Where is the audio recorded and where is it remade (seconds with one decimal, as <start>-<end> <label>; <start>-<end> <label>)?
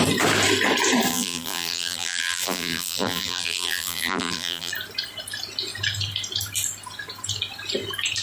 0.0-1.1 recorded; 1.1-4.7 remade; 4.7-8.2 recorded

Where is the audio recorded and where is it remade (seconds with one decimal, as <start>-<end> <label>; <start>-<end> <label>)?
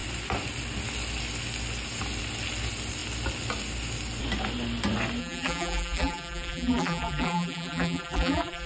0.0-5.2 recorded; 5.2-8.7 remade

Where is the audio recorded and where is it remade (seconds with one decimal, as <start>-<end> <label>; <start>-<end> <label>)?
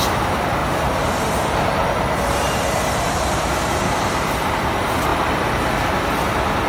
0.0-5.1 remade; 5.1-5.9 recorded; 5.9-6.7 remade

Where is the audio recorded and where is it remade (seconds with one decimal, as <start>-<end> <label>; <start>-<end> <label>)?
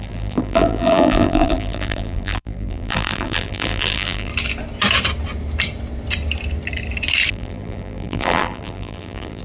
0.0-4.3 remade; 4.3-7.3 recorded; 7.3-9.4 remade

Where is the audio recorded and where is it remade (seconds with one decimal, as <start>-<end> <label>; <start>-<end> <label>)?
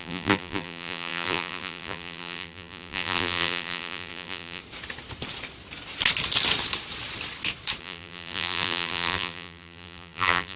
0.0-4.6 remade; 4.6-7.8 recorded; 7.8-10.6 remade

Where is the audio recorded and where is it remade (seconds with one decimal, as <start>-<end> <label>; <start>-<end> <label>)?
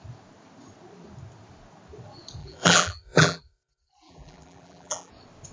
0.0-2.4 recorded; 2.4-5.1 remade; 5.1-5.5 recorded